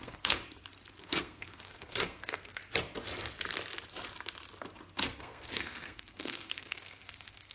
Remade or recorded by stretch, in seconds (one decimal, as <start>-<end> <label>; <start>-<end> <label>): 0.0-0.4 remade; 0.4-1.0 recorded; 1.0-2.6 remade; 2.6-5.2 recorded; 5.2-7.5 remade